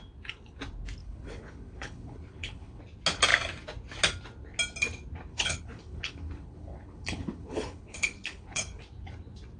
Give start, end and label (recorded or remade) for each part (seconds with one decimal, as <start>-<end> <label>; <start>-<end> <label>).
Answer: 0.0-1.0 recorded; 1.0-2.8 remade; 2.8-5.3 recorded; 5.3-8.8 remade; 8.8-9.6 recorded